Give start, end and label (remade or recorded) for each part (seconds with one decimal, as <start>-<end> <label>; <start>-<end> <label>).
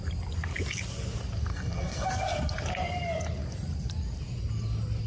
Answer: 0.0-1.5 recorded; 1.5-2.1 remade; 2.1-5.1 recorded